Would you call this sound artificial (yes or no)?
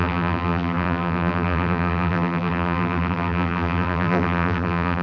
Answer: yes